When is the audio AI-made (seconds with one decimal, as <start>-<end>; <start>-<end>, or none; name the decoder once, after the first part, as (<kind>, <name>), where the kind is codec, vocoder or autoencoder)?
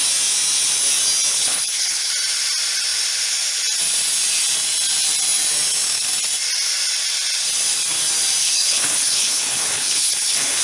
1.3-2.1 (codec, HILCodec); 8.4-10.6